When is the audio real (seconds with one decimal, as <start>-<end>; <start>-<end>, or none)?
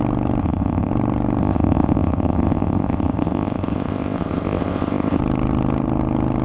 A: 0.0-0.4; 0.9-1.4; 5.2-6.4